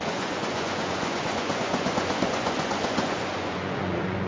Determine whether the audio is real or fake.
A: fake